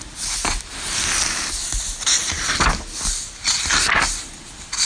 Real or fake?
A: real